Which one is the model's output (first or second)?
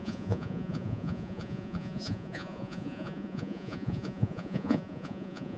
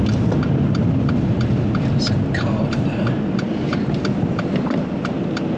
first